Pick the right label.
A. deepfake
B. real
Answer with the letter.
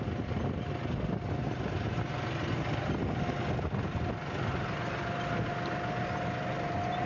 B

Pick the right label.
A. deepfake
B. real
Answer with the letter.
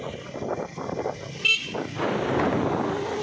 B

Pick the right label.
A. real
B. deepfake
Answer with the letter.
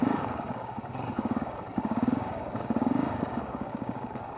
B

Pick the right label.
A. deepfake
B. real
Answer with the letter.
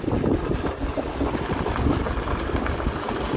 B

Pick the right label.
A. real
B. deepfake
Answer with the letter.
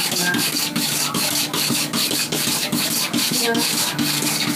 B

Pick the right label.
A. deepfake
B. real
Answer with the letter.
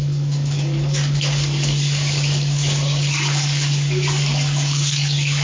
A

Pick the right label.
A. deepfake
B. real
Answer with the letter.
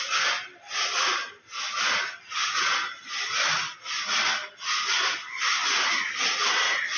B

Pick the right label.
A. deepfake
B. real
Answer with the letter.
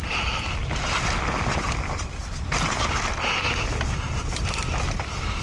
B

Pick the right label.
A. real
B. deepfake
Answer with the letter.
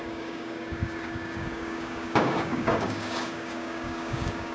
B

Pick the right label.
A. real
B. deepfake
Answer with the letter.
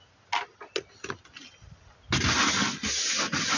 A